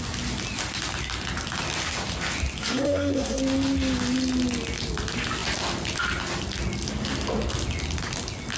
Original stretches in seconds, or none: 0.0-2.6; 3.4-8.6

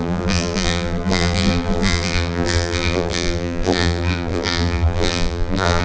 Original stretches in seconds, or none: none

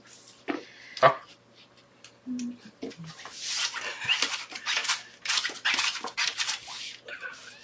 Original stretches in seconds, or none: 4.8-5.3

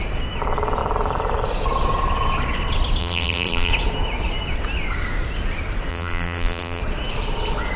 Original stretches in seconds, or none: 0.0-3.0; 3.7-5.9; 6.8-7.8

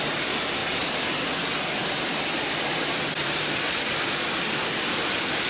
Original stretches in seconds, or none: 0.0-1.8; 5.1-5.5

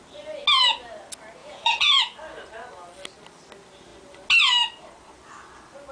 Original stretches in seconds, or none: 0.0-1.4; 2.0-5.9